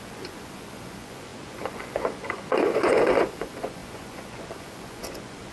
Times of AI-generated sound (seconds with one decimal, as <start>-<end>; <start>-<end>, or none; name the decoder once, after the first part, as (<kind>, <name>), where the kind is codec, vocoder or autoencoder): 0.0-5.5 (vocoder, Vocos)